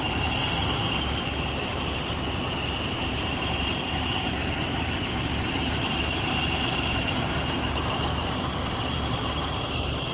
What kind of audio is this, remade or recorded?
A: remade